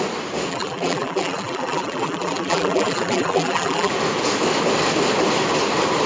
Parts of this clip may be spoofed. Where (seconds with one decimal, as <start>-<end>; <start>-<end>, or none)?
0.5-3.9